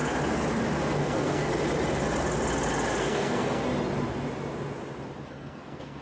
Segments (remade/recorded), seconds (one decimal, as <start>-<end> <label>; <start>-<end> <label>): 0.0-1.0 recorded; 1.0-1.5 remade; 1.5-3.0 recorded; 3.0-3.6 remade; 3.6-5.2 recorded; 5.2-6.0 remade